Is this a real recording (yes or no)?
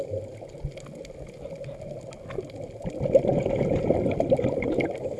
yes